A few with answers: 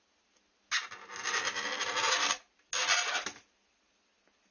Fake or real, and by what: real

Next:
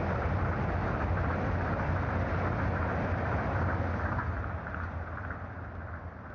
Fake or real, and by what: real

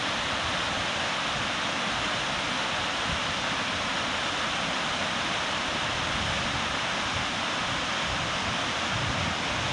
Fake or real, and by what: real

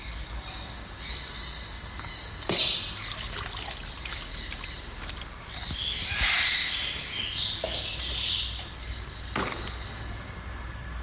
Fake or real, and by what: real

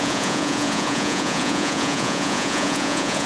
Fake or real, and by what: fake, vocoder, Vocos